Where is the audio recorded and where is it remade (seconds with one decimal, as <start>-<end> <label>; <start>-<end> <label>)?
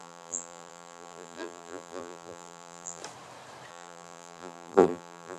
0.0-3.0 remade; 3.0-3.7 recorded; 3.7-5.4 remade